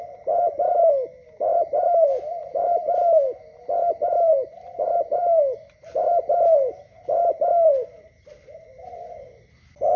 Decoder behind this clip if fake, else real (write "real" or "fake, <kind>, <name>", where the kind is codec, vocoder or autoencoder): real